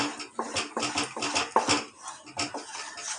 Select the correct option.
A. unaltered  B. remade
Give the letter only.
A